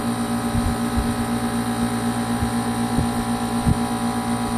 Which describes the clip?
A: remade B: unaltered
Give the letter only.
B